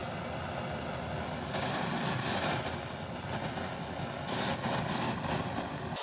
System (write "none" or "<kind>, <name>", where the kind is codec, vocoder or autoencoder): none